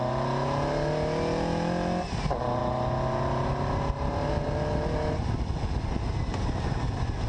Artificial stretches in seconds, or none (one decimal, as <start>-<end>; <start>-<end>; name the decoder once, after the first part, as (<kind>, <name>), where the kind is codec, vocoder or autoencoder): none